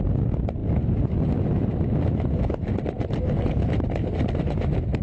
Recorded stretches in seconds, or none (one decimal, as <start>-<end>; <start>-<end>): 0.0-5.0